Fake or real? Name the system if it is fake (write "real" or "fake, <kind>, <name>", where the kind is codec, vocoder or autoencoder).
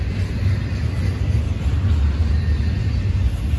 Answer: real